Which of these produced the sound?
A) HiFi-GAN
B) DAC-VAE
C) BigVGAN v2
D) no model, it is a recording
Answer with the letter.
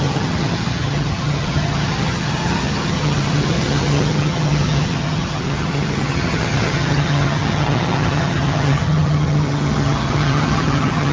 A